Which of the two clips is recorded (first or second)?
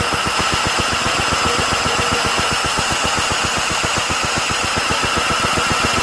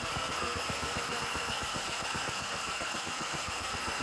first